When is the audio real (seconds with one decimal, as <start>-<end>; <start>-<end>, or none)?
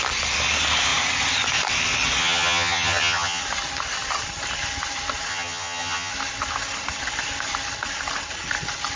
0.0-2.2; 3.4-5.3; 6.1-9.0